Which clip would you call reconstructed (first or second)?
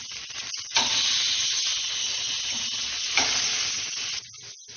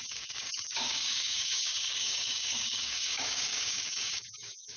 second